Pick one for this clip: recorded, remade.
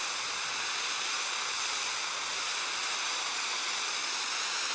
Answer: remade